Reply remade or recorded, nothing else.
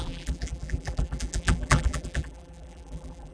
remade